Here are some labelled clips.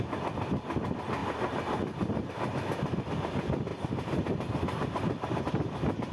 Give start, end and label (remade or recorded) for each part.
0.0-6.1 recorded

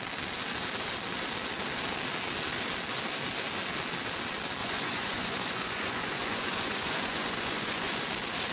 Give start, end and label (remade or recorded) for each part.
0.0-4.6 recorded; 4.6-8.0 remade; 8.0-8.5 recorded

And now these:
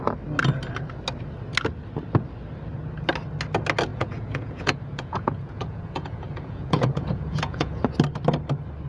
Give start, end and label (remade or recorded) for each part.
0.0-3.9 recorded; 3.9-7.8 remade; 7.8-8.9 recorded

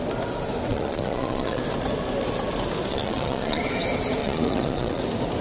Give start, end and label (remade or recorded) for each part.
0.0-0.7 recorded; 0.7-1.6 remade; 1.6-2.9 recorded; 2.9-3.6 remade; 3.6-4.2 recorded; 4.2-5.0 remade; 5.0-5.4 recorded

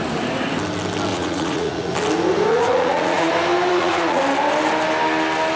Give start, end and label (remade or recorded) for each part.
0.0-1.1 recorded; 1.1-1.9 remade; 1.9-2.5 recorded; 2.5-3.3 remade; 3.3-3.7 recorded; 3.7-4.2 remade; 4.2-5.6 recorded

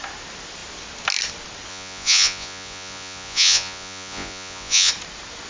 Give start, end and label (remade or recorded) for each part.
0.0-1.7 recorded; 1.7-4.9 remade; 4.9-5.5 recorded

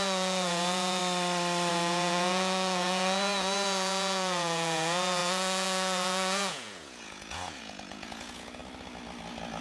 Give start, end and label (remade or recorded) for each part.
0.0-1.0 remade; 1.0-1.7 recorded; 1.7-8.6 remade; 8.6-9.6 recorded

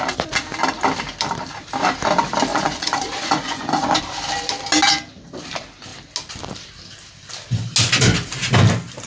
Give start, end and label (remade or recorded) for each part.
0.0-2.5 recorded; 2.5-4.0 remade; 4.0-9.1 recorded